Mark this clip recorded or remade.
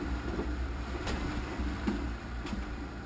remade